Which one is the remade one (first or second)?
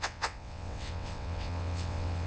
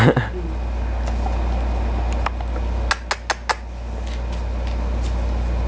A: first